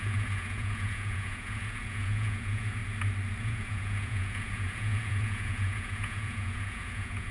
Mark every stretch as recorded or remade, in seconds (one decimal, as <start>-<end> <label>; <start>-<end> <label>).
0.0-2.8 remade; 2.8-3.4 recorded; 3.4-7.3 remade